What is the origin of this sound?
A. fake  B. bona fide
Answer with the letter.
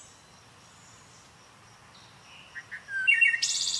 B